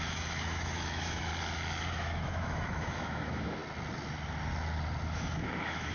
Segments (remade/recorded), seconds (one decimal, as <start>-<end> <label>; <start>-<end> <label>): 0.0-1.3 remade; 1.3-1.9 recorded; 1.9-3.6 remade; 3.6-5.1 recorded; 5.1-5.9 remade

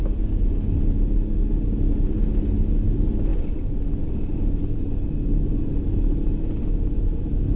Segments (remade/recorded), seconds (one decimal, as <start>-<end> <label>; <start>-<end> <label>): 0.0-7.6 recorded